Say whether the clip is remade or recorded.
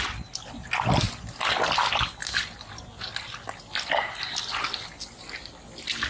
recorded